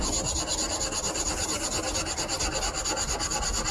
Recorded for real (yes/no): yes